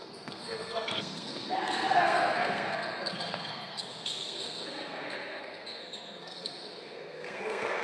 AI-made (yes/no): yes